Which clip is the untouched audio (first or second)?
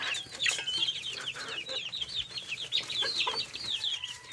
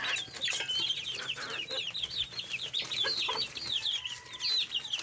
second